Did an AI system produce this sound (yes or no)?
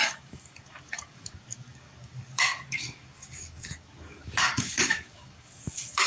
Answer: yes